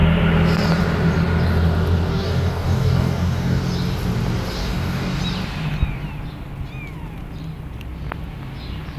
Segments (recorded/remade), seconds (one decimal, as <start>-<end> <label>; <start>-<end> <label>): 0.0-2.1 recorded; 2.1-3.6 remade; 3.6-4.6 recorded; 4.6-5.2 remade; 5.2-9.0 recorded